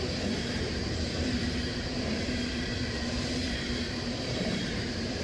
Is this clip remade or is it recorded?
remade